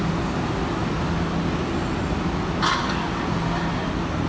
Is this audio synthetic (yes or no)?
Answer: no